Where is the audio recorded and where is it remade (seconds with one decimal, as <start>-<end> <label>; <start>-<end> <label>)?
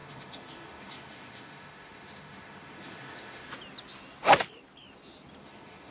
0.0-3.5 remade; 3.5-5.4 recorded; 5.4-5.9 remade